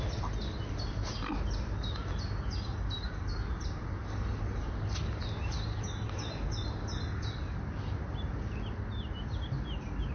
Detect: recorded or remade recorded